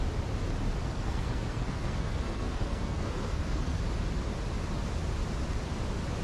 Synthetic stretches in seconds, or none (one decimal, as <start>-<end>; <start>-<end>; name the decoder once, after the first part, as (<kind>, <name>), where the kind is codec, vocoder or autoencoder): 0.8-3.8 (codec, SNAC)